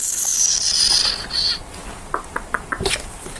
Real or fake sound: real